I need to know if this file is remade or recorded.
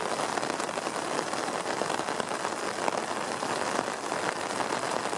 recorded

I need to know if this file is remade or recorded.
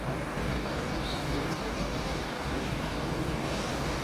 remade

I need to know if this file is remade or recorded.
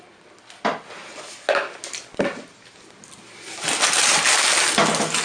recorded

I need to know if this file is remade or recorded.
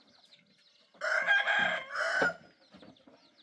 recorded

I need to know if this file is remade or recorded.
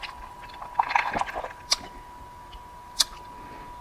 recorded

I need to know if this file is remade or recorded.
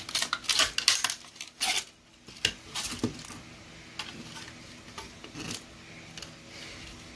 recorded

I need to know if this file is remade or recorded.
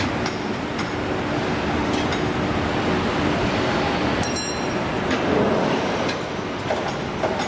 recorded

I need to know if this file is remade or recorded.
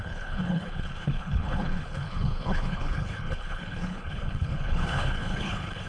remade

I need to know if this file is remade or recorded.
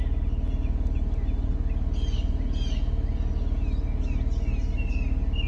recorded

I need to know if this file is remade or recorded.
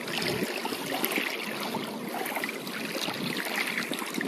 recorded